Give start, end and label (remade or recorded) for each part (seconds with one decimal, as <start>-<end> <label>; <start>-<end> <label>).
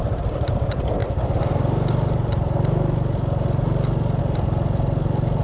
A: 0.0-5.4 recorded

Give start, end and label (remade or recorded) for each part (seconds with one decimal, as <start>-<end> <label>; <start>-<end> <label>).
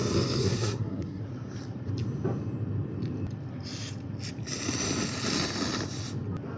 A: 0.0-0.4 recorded; 0.4-1.2 remade; 1.2-6.6 recorded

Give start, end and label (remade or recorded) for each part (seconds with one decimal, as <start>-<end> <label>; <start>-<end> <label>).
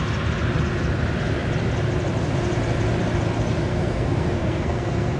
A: 0.0-3.7 recorded; 3.7-5.2 remade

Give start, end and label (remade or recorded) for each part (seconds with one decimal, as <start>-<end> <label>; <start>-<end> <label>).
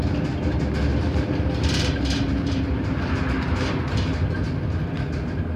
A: 0.0-0.9 recorded; 0.9-4.3 remade; 4.3-5.6 recorded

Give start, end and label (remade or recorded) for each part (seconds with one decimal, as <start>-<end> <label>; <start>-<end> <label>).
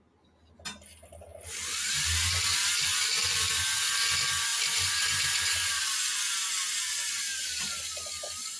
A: 0.0-4.5 recorded; 4.5-5.8 remade; 5.8-8.6 recorded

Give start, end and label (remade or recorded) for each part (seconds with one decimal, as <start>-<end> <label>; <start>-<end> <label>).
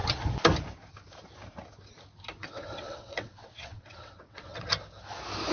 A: 0.0-2.4 recorded; 2.4-4.7 remade; 4.7-5.5 recorded